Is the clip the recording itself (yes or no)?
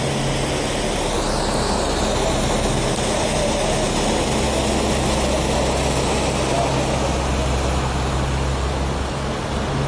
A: yes